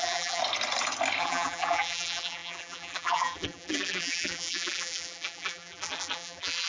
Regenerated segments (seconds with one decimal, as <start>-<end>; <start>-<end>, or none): 0.0-0.4; 1.2-6.7